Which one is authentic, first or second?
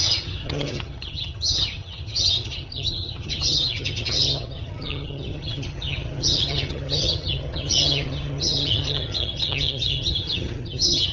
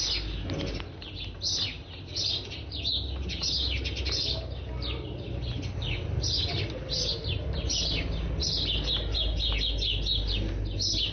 second